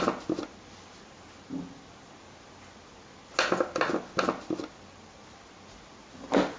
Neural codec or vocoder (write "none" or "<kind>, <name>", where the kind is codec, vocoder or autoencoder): none